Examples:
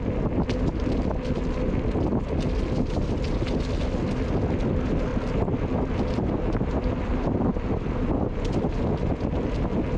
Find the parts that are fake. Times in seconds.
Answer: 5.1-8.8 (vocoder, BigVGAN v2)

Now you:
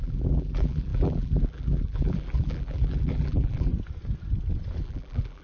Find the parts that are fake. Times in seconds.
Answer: 0.0-3.7 (vocoder, BigVGAN v2); 4.8-5.4

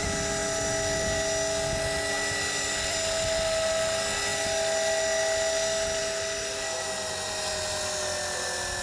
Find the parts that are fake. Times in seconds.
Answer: none

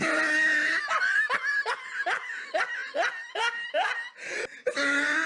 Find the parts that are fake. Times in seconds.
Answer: none